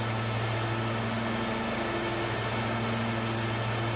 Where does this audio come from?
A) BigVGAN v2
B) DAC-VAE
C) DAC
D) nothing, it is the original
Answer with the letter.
D